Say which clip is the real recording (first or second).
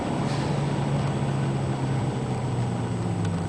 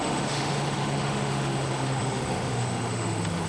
first